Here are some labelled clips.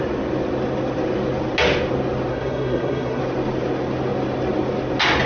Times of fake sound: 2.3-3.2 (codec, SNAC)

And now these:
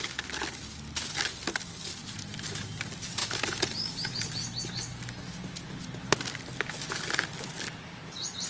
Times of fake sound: none